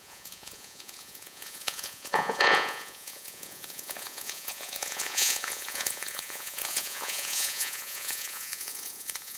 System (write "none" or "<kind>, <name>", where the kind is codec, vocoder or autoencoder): vocoder, Vocos